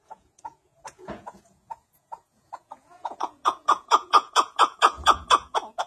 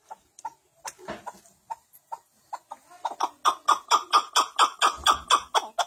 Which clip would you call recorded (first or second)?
second